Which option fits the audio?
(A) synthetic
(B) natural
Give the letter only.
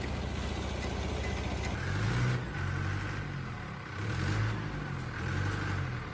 B